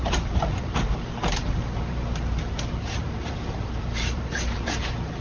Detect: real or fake fake